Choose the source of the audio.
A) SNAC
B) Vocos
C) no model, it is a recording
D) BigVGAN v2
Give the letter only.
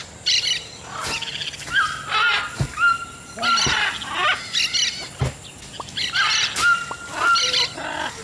C